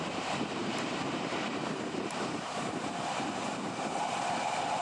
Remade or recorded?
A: remade